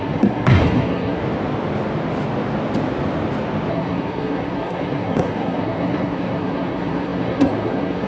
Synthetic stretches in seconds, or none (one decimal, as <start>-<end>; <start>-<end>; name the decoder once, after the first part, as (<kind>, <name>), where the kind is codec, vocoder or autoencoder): 0.0-1.2 (codec, SNAC); 3.7-8.1